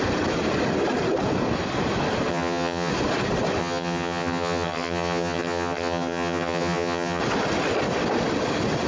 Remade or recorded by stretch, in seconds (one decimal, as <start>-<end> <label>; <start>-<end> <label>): 0.0-2.3 recorded; 2.3-2.9 remade; 2.9-3.6 recorded; 3.6-7.2 remade; 7.2-8.9 recorded